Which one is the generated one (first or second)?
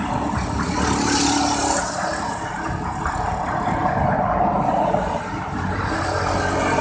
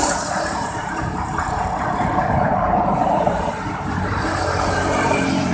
second